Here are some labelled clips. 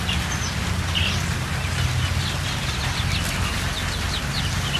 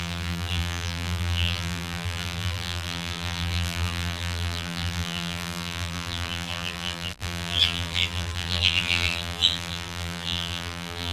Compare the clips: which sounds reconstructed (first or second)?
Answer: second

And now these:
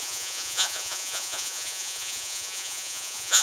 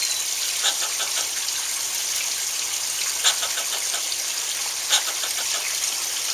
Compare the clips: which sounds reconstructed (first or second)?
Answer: first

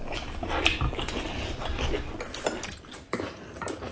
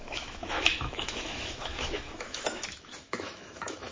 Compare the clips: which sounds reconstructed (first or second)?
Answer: second